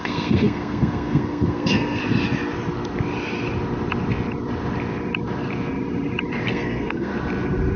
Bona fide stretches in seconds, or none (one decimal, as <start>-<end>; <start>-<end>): 2.0-6.5; 7.1-7.8